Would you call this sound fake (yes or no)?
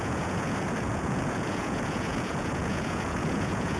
yes